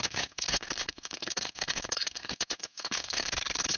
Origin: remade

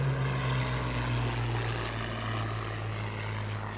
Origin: recorded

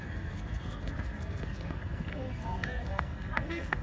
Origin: remade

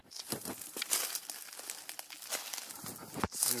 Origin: recorded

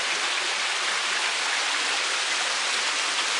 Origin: recorded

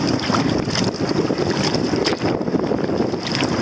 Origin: recorded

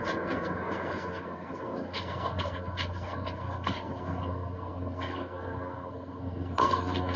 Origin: remade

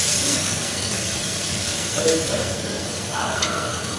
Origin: remade